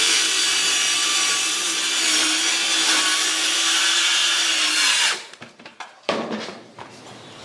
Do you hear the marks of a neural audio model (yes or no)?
yes